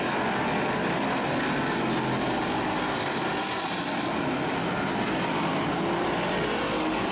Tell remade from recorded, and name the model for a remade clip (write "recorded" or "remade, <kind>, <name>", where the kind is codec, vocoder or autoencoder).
recorded